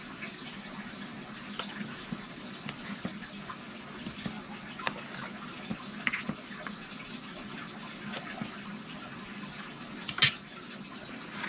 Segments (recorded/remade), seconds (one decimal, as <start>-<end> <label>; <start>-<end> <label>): 0.0-11.5 recorded